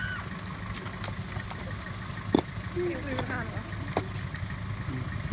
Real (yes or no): yes